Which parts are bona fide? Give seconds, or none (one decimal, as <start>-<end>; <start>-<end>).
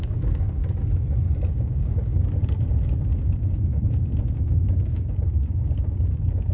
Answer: 0.6-1.5